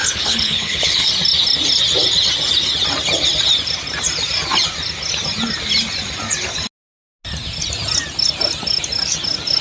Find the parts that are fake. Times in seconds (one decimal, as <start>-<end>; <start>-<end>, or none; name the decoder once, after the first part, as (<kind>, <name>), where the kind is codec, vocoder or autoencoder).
0.0-1.1 (codec, HILCodec)

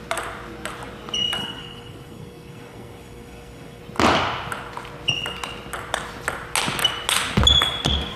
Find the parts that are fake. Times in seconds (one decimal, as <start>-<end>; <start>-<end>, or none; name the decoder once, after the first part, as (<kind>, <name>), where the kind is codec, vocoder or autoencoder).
1.4-3.8 (codec, SNAC)